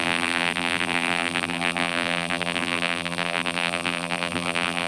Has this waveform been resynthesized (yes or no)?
yes